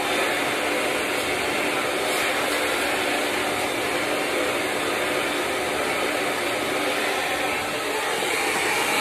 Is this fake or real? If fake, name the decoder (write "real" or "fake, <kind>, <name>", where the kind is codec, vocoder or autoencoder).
real